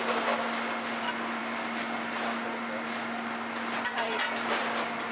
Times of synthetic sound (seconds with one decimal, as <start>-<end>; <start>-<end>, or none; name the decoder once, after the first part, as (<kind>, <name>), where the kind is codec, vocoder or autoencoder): none